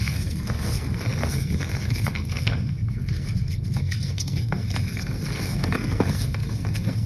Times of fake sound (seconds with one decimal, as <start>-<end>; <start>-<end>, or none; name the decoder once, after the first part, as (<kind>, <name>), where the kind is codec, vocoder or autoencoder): 0.0-7.1 (codec, SNAC)